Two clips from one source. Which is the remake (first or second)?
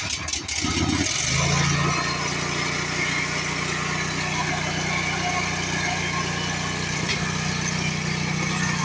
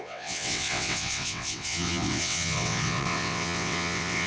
second